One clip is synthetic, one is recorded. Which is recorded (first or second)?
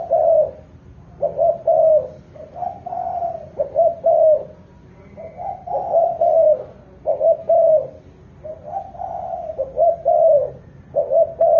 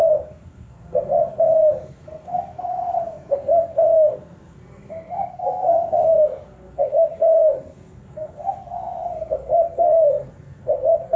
first